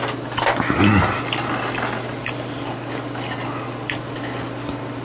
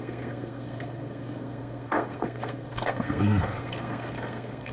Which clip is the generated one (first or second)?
second